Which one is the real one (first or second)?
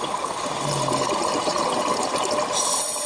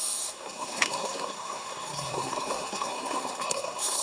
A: first